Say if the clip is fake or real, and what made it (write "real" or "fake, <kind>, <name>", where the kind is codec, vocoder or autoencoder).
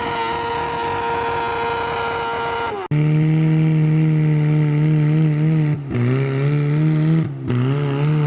real